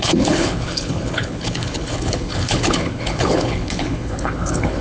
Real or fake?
fake